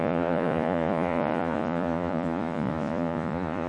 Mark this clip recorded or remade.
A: remade